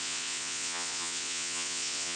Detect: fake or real fake